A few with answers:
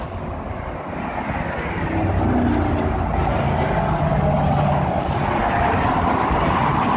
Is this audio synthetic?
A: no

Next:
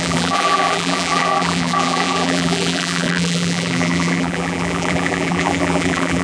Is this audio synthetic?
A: yes